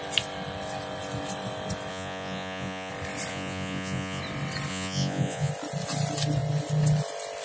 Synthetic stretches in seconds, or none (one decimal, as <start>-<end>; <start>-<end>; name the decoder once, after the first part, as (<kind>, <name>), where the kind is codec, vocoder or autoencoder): 1.9-2.9 (vocoder, Vocos); 3.3-4.2; 4.7-5.5